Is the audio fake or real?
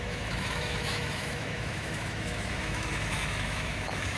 fake